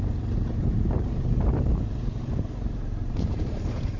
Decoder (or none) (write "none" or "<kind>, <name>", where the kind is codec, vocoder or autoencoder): vocoder, BigVGAN v2